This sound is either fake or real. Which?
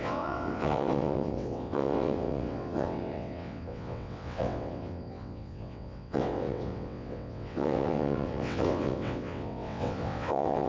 fake